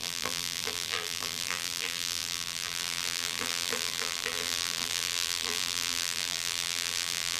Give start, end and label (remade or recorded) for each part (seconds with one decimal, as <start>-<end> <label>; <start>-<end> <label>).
0.0-7.4 remade